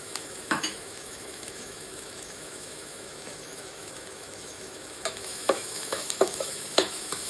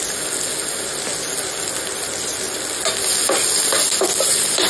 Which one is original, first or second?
second